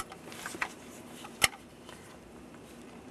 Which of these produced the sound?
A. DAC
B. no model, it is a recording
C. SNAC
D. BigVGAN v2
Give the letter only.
D